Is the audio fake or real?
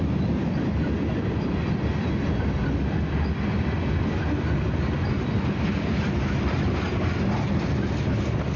real